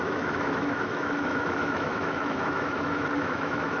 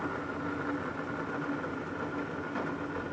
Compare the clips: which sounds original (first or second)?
second